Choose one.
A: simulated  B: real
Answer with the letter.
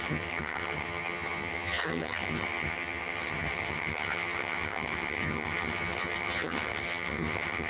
A